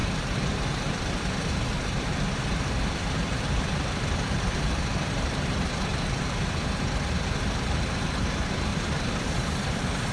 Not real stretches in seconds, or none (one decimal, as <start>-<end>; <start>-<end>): 0.0-10.1